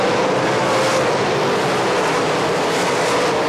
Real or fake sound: real